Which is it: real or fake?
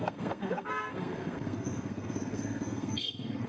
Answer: fake